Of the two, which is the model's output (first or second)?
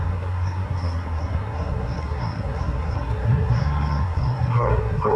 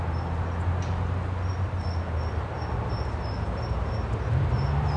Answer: first